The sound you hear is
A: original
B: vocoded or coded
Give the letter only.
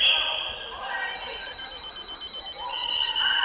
A